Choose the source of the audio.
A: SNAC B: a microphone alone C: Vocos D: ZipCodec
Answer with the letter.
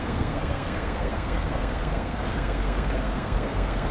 A